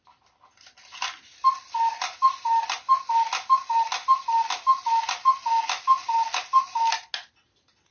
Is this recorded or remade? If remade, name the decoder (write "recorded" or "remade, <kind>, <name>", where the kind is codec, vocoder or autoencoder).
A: recorded